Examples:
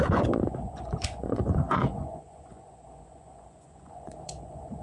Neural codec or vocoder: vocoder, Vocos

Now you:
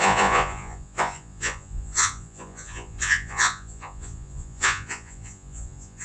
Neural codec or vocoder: vocoder, Vocos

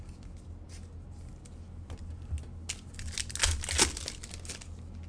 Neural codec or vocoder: none